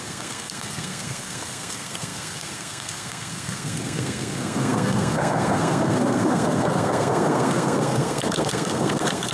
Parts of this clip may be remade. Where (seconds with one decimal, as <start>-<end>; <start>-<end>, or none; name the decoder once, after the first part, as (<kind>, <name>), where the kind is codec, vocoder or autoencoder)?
0.0-9.3 (codec, SNAC)